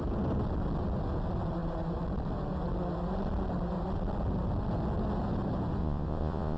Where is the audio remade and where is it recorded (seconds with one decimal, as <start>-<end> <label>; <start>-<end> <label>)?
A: 0.0-5.8 recorded; 5.8-6.6 remade